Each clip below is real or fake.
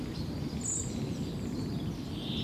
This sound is real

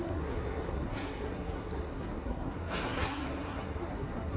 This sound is fake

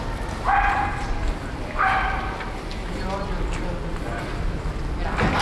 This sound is real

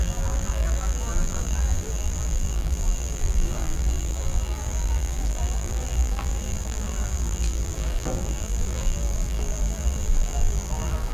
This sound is fake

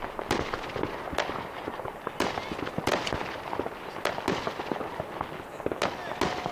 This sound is real